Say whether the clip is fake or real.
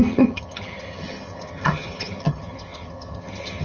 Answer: fake